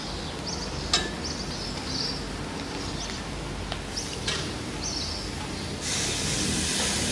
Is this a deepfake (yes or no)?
no